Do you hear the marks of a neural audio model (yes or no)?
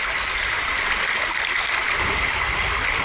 no